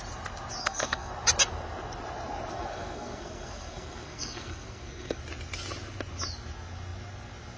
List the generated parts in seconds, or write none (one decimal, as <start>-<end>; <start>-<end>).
0.6-1.1; 2.5-5.2